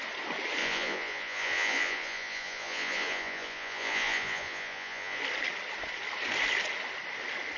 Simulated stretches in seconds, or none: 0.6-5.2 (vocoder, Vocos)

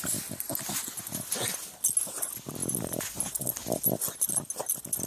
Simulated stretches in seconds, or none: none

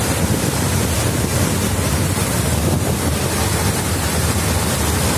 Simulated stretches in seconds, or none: none

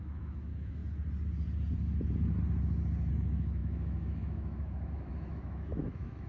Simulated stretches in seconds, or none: 0.0-0.8 (autoencoder, DAC-VAE); 3.1-6.3

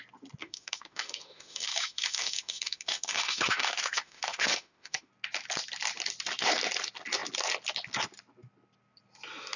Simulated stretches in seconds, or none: 0.4-5.1 (autoencoder, DAC-VAE)

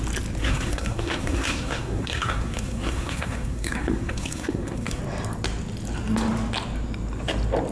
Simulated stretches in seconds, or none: 0.4-5.0 (codec, SNAC)